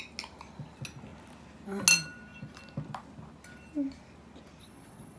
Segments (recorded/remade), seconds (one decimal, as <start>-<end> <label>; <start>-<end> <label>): 0.0-4.6 recorded; 4.6-5.2 remade